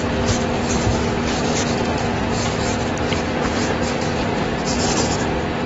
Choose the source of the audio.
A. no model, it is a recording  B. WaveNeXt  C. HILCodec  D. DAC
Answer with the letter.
A